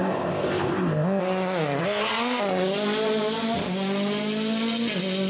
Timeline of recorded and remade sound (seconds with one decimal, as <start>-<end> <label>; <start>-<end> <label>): 0.0-1.2 remade; 1.2-1.8 recorded; 1.8-2.4 remade; 2.4-5.3 recorded